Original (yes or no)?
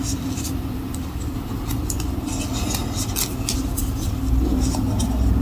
yes